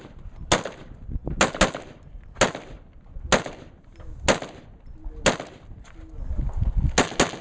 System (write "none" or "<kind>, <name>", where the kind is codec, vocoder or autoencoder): none